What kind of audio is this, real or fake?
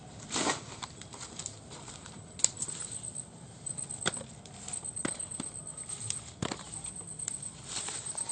real